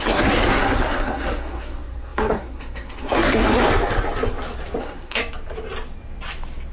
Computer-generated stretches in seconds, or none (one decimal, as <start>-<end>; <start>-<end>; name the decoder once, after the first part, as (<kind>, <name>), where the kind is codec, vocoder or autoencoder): 0.0-3.6 (codec, SNAC); 4.8-5.2